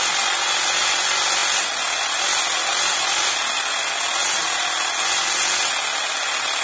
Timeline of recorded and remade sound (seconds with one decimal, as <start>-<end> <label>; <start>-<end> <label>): 0.0-6.6 recorded